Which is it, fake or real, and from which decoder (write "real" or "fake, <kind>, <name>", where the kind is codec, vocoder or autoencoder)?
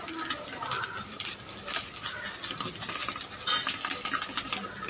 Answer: real